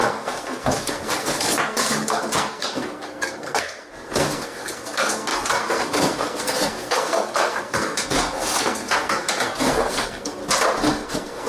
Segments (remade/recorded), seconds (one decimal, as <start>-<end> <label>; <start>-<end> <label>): 0.0-10.4 remade; 10.4-10.9 recorded; 10.9-11.5 remade